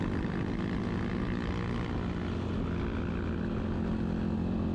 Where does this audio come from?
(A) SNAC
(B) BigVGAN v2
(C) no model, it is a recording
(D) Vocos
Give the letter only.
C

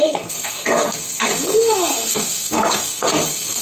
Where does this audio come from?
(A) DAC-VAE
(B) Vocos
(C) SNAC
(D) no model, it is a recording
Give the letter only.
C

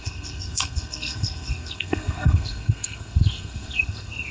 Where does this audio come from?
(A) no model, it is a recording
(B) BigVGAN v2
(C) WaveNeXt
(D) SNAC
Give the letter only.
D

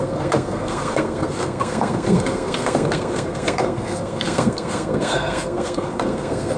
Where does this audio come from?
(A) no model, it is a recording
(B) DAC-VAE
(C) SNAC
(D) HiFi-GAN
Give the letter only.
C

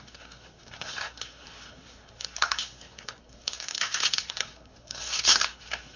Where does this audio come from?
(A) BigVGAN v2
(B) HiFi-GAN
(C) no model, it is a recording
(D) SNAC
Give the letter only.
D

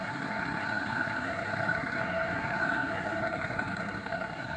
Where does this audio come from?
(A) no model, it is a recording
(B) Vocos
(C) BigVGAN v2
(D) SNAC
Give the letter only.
D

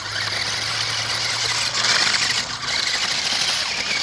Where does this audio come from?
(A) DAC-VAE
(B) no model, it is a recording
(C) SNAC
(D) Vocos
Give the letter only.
B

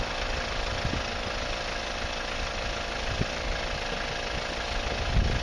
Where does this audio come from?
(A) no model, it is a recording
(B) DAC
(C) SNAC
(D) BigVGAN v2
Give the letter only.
A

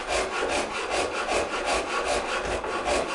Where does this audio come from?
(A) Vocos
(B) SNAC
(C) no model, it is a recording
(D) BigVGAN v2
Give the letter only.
C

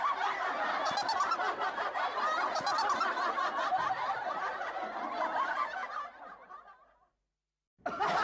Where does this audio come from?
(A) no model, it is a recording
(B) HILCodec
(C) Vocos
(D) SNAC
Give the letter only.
A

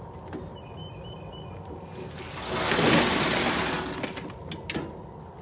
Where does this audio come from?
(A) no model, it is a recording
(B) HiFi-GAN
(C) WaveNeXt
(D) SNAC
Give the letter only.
A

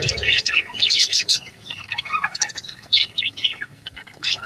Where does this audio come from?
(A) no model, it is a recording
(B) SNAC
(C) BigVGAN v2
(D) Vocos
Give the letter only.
B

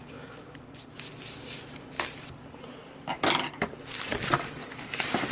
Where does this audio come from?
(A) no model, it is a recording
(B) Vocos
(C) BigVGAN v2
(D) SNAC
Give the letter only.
A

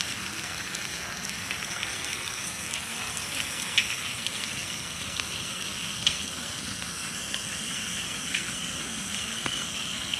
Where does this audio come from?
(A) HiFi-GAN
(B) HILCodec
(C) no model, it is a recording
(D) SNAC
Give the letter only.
D